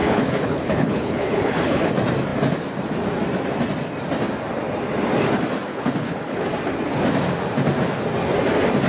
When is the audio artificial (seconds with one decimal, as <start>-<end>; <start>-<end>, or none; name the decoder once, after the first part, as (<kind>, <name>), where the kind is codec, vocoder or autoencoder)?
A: 0.0-1.9 (codec, HILCodec); 5.7-6.4